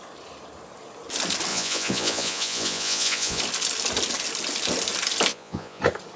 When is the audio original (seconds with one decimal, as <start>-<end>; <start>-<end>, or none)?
0.0-1.5; 3.4-5.3; 5.8-6.2